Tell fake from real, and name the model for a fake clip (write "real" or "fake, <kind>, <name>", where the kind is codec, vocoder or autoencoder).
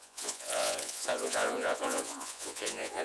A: fake, vocoder, Vocos